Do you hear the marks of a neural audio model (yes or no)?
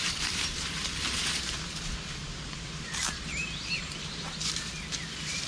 yes